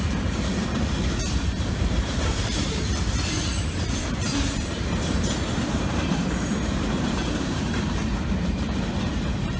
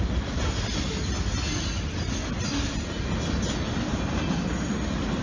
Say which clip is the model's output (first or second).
first